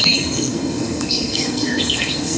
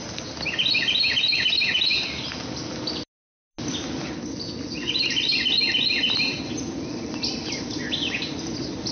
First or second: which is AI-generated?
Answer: first